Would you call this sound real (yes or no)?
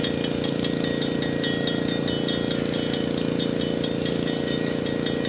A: yes